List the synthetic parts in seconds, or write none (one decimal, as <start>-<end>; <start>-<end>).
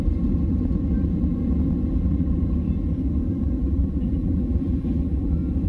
3.6-5.3